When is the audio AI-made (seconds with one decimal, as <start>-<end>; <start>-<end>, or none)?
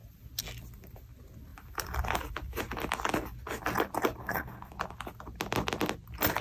4.2-4.7